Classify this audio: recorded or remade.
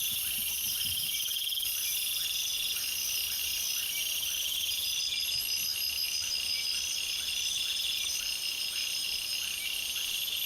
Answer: recorded